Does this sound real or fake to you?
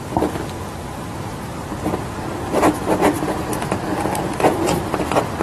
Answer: real